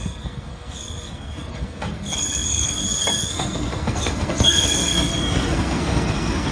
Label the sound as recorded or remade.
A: remade